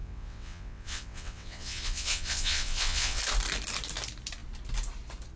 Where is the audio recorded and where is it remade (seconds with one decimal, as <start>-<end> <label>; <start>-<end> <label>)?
0.0-3.2 remade; 3.2-5.4 recorded

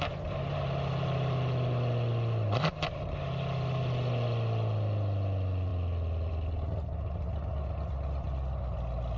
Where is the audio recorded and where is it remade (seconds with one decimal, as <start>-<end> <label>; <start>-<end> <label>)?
0.0-9.2 recorded